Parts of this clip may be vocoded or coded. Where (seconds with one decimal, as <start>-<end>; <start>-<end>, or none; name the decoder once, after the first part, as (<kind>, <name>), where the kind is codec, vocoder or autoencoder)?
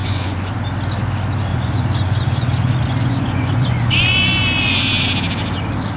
0.0-0.5 (vocoder, Vocos); 1.5-4.8